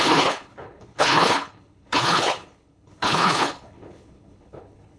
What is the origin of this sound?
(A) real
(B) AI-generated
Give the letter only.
B